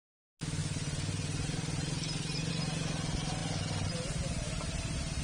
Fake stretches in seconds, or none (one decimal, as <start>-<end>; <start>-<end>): 0.6-2.5

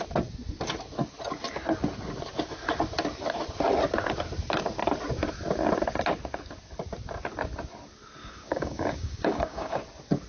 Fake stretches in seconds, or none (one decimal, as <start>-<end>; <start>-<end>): 8.2-9.8